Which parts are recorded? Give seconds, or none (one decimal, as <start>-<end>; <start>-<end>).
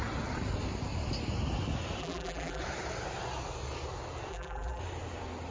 0.0-2.0; 2.6-4.3; 4.8-5.5